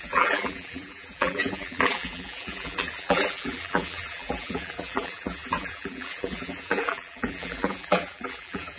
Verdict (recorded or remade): remade